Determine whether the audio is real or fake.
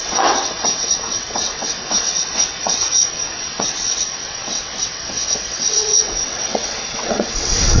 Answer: fake